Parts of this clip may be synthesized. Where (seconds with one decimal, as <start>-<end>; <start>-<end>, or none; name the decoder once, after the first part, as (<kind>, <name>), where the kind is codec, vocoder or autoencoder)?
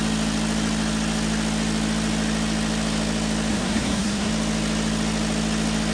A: 3.5-4.3 (codec, SNAC)